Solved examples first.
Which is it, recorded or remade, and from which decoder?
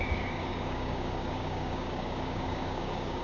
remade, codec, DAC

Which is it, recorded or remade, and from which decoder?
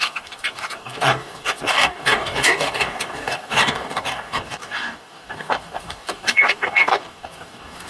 remade, codec, DAC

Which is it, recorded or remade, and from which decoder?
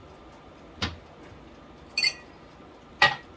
recorded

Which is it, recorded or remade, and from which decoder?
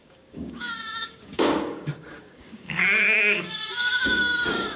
remade, codec, DAC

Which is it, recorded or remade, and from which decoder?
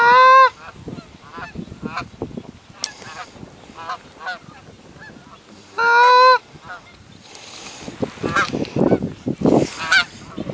recorded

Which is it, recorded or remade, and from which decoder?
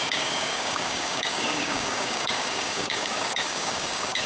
remade, codec, DAC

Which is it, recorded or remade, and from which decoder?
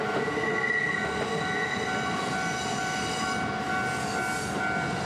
recorded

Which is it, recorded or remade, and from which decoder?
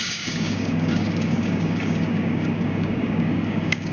remade, codec, DAC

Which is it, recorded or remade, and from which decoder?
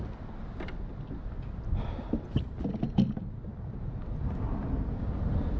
recorded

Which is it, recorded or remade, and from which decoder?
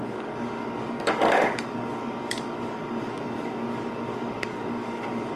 remade, codec, DAC